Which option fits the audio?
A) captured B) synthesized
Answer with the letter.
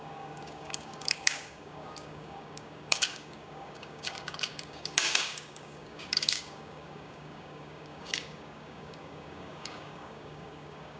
B